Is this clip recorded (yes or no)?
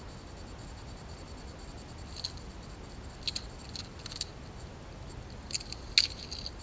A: yes